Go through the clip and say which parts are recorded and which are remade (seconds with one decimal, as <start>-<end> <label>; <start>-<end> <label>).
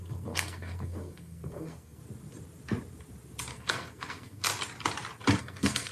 0.0-2.0 remade; 2.0-3.5 recorded; 3.5-4.5 remade; 4.5-5.4 recorded; 5.4-5.9 remade